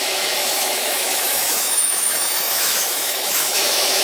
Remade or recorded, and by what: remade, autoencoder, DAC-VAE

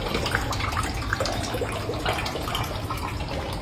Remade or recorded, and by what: recorded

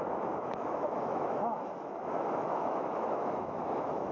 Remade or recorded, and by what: remade, autoencoder, DAC-VAE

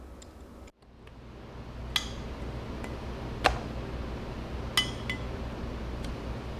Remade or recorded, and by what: recorded